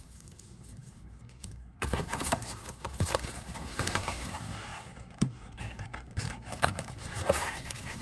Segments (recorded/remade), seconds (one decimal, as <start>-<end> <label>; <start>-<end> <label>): 0.0-8.0 remade